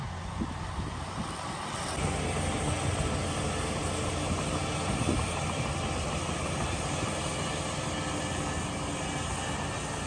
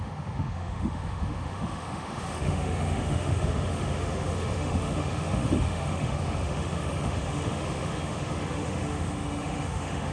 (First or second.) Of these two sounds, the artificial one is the second